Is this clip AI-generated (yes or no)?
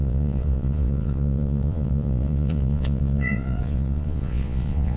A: yes